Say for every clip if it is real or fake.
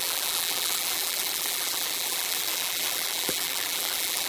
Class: fake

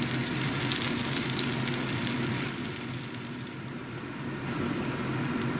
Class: fake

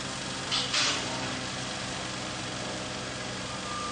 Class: real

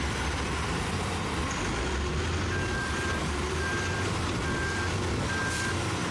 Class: fake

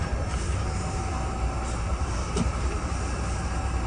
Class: fake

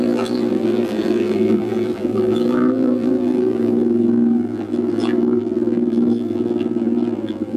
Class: fake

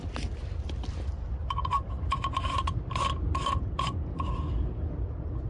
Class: fake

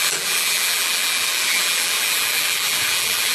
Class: fake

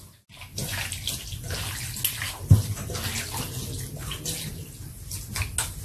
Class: real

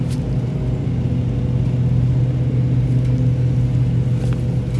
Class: real